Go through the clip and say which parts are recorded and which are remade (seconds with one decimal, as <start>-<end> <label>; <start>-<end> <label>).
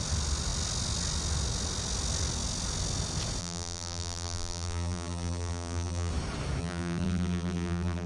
0.0-3.4 recorded; 3.4-6.1 remade; 6.1-6.6 recorded; 6.6-8.1 remade